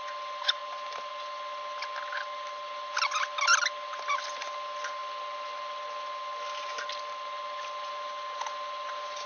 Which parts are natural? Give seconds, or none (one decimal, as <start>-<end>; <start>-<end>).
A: 0.0-9.3

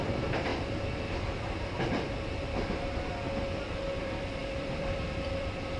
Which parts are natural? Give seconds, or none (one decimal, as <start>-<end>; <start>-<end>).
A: 0.5-4.0

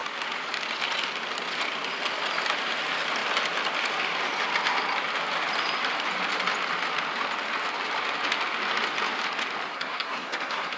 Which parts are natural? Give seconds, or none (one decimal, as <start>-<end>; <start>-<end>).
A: 0.0-9.7